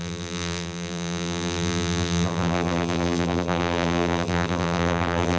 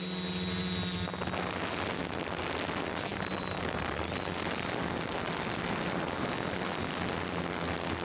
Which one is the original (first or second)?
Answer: second